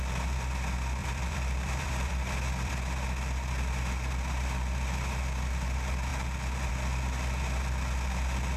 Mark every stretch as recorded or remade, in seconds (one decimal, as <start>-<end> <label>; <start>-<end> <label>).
0.0-1.0 recorded; 1.0-2.7 remade; 2.7-8.6 recorded